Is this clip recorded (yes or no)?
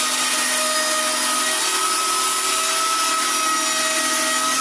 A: yes